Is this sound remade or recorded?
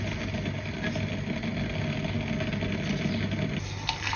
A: recorded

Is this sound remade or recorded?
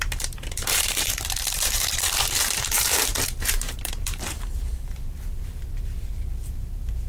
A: remade